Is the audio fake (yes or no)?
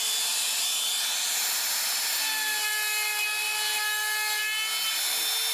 no